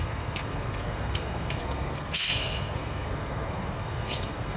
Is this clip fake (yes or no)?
yes